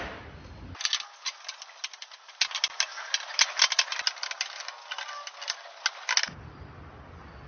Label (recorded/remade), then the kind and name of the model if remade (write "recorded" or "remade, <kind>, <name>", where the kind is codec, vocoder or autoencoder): recorded